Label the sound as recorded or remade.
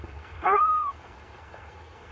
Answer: remade